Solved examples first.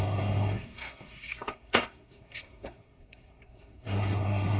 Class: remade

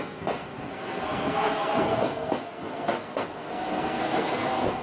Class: remade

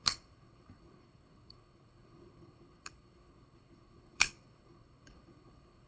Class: remade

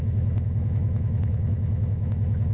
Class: remade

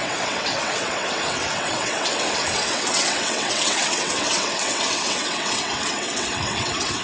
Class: remade